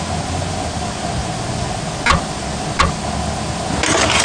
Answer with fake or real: real